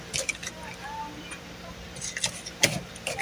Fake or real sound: real